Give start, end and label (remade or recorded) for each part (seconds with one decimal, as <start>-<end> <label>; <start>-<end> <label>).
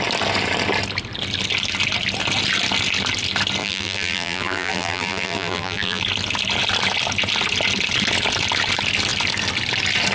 0.0-3.6 recorded; 3.6-6.0 remade; 6.0-10.1 recorded